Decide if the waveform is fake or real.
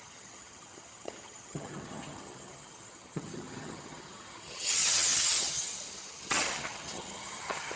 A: fake